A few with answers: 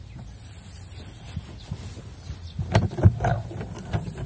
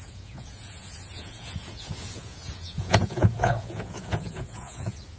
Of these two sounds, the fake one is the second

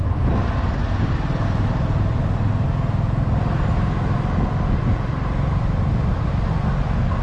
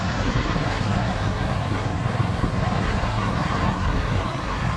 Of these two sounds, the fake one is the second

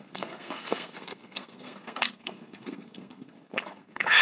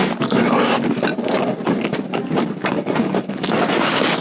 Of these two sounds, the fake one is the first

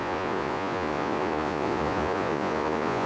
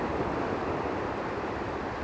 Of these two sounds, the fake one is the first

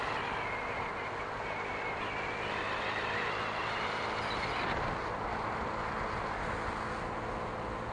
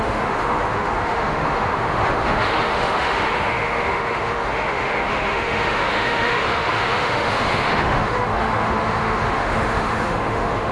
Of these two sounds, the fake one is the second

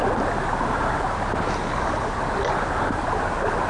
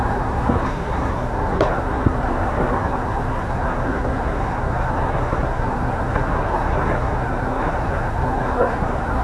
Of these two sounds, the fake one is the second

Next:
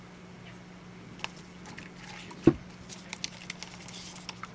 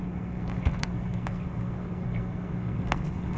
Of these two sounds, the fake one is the second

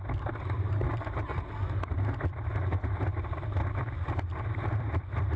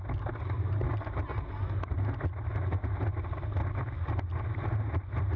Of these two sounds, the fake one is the first